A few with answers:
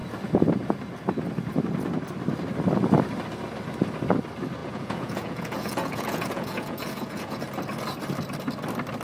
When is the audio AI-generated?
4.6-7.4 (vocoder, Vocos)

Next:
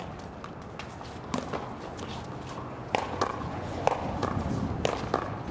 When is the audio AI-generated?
2.6-4.4 (vocoder, Vocos)